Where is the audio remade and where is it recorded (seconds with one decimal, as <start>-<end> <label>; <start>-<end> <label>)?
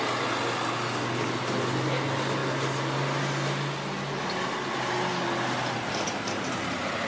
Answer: 0.0-7.1 recorded